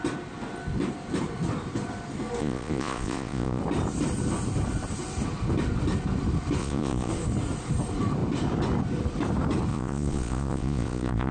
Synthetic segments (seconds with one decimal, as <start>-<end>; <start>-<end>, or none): 2.4-3.6; 6.6-7.1; 9.7-11.3